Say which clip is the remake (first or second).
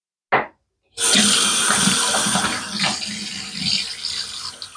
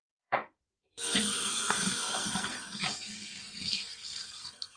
second